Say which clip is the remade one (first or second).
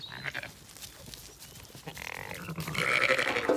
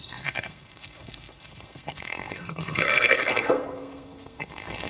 second